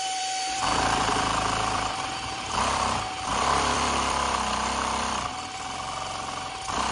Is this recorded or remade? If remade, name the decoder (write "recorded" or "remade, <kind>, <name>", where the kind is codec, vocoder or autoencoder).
remade, vocoder, BigVGAN v2